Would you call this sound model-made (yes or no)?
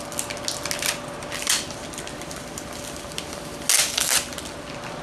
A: no